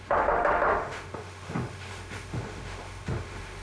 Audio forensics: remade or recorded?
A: remade